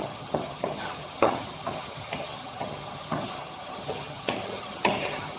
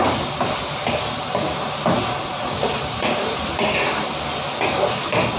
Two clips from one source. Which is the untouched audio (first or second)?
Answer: second